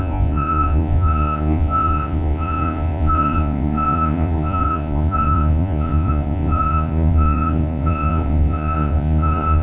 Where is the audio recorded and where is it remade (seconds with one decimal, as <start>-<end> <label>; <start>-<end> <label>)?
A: 0.0-9.6 remade